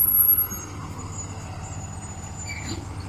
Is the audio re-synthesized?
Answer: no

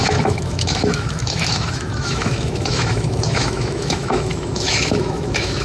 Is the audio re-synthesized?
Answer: yes